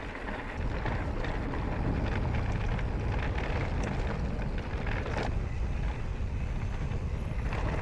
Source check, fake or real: real